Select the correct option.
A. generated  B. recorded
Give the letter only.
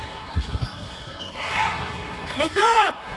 A